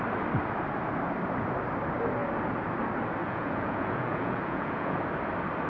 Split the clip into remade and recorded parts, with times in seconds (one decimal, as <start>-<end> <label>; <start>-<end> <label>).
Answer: 0.0-3.2 recorded; 3.2-5.0 remade; 5.0-5.7 recorded